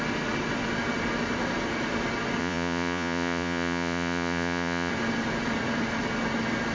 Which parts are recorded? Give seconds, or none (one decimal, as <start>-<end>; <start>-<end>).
0.0-2.4; 4.9-6.7